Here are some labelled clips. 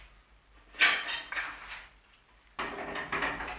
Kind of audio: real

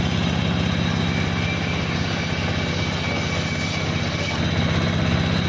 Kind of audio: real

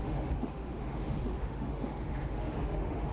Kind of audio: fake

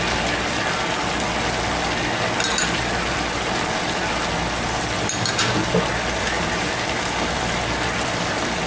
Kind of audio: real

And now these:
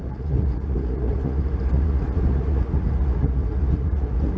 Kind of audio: fake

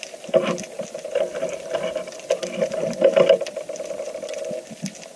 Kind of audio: real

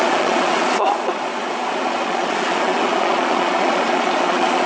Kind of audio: fake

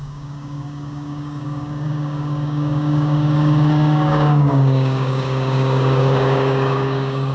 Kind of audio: fake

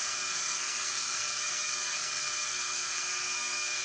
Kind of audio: fake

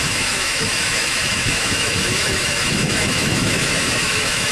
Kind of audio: fake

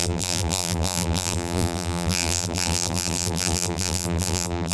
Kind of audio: fake